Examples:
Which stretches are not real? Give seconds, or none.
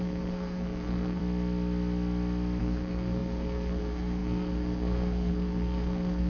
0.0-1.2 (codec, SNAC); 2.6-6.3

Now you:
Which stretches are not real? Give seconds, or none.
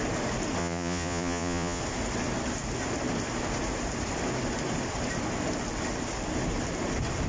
0.6-1.8 (vocoder, Vocos)